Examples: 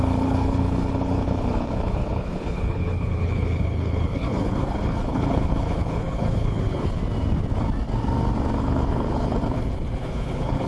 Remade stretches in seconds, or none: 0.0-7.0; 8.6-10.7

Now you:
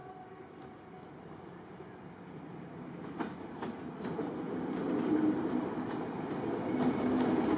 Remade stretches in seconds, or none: none

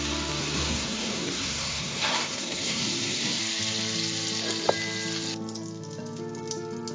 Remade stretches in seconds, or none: 0.4-3.4

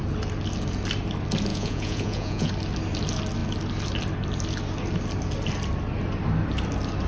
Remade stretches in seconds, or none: 1.5-2.5